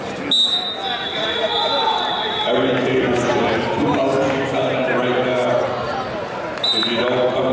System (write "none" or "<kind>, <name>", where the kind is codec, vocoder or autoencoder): none